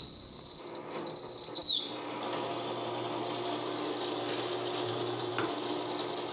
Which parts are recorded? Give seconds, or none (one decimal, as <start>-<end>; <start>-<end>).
0.0-6.3